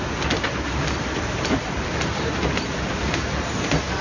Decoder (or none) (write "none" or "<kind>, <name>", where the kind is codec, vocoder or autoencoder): none